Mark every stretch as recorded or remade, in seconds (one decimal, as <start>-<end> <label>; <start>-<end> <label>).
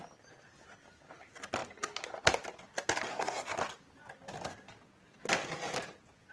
0.0-3.1 recorded; 3.1-3.6 remade; 3.6-6.3 recorded